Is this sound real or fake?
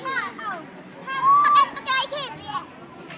real